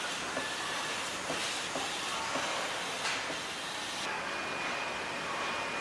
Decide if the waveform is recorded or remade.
recorded